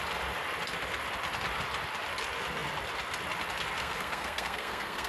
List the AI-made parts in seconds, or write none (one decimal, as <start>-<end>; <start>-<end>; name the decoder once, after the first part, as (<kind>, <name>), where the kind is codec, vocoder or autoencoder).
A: 3.8-5.1 (codec, SNAC)